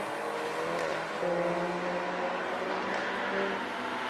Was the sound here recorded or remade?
recorded